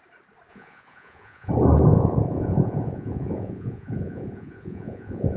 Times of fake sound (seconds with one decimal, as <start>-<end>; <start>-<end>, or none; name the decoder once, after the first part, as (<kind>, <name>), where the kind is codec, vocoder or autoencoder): 0.5-1.5 (vocoder, Vocos); 1.9-5.4